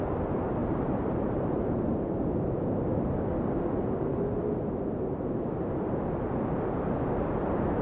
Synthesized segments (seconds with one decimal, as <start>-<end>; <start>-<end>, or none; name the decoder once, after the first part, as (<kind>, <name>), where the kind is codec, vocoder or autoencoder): 0.6-2.9 (vocoder, BigVGAN v2)